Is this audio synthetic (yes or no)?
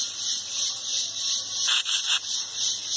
no